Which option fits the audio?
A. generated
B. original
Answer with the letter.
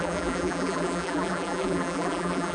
A